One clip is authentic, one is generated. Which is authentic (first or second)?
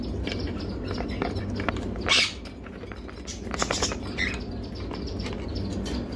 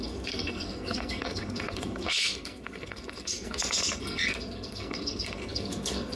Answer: first